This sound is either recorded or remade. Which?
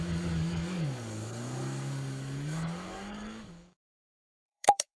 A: remade